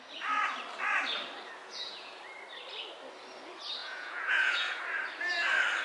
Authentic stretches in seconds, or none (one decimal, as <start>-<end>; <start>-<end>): 0.0-1.6; 2.2-3.8; 4.8-5.8